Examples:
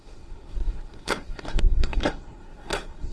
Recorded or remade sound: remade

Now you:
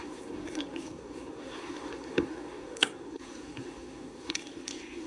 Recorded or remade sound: remade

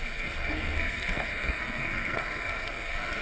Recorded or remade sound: remade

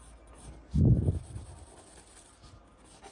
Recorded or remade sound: recorded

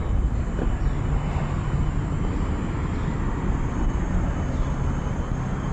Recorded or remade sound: recorded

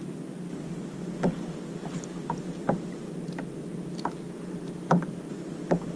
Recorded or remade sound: recorded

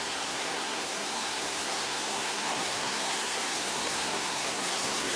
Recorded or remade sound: remade